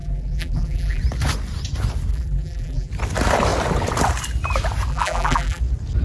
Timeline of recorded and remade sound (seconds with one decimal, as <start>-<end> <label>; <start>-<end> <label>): 0.0-1.0 remade; 1.0-2.1 recorded; 2.1-2.9 remade; 2.9-4.9 recorded; 4.9-5.6 remade; 5.6-6.0 recorded